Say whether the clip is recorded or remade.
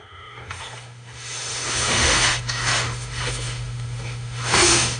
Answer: remade